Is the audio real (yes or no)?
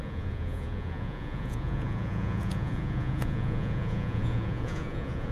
no